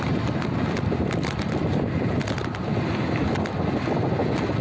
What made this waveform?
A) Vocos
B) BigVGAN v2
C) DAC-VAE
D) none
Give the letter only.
D